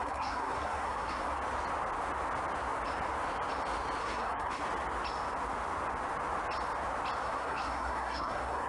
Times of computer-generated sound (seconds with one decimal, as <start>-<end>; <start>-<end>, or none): 0.0-1.2; 4.0-4.6; 7.2-8.7